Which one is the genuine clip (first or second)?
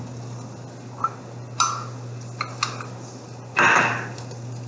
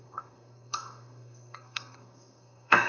first